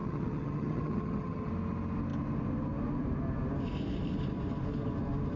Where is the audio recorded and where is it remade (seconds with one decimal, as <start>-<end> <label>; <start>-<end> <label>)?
0.0-1.5 remade; 1.5-5.4 recorded